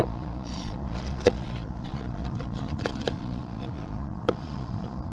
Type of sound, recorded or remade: remade